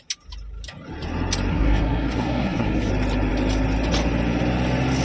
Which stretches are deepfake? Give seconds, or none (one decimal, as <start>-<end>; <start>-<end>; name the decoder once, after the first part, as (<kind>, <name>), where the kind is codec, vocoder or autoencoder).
1.5-2.9 (codec, SNAC)